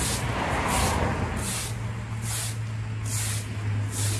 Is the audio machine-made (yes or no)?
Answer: no